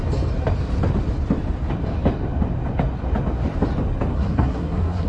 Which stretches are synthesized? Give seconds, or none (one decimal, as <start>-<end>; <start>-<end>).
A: 4.1-5.1

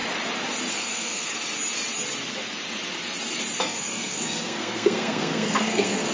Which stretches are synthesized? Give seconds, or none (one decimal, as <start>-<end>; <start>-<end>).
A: 0.7-1.3; 3.6-6.1

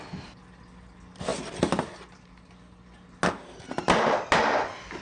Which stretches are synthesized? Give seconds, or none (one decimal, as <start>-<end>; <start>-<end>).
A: none

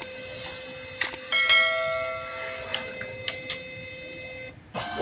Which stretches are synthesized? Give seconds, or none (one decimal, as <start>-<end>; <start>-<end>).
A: none

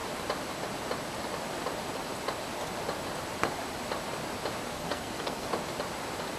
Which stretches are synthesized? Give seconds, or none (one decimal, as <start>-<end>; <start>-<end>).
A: 4.7-5.5

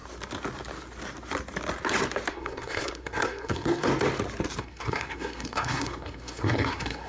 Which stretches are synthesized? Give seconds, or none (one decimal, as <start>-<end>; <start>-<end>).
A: 2.3-3.9; 4.6-7.1

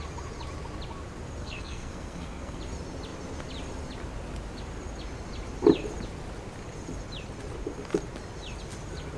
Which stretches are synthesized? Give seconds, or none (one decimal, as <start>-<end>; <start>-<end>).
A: 1.4-2.6